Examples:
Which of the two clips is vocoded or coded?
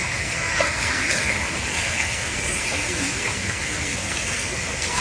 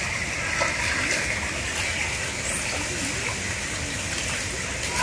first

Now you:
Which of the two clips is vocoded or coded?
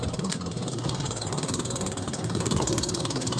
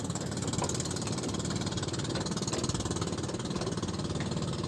first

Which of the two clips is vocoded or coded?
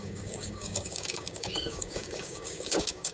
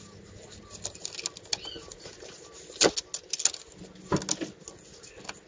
first